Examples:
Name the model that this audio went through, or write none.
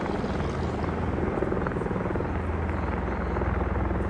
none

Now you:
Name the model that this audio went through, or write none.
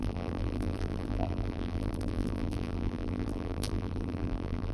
vocoder, BigVGAN v2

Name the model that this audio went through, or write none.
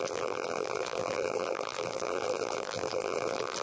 vocoder, BigVGAN v2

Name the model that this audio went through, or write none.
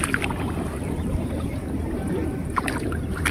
vocoder, BigVGAN v2